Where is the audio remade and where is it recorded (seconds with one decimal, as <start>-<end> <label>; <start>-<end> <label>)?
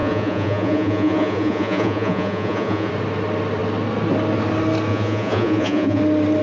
0.0-2.9 remade; 2.9-4.9 recorded; 4.9-6.0 remade; 6.0-6.4 recorded